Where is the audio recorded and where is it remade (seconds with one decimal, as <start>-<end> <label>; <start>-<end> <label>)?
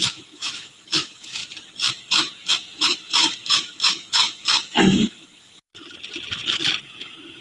0.0-1.4 remade; 1.4-1.9 recorded; 1.9-5.7 remade; 5.7-6.8 recorded; 6.8-7.4 remade